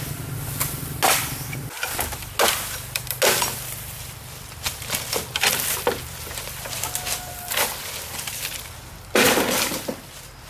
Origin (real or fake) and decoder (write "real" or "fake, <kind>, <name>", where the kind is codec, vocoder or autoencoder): real